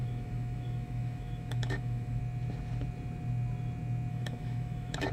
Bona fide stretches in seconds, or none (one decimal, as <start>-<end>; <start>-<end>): 2.2-4.1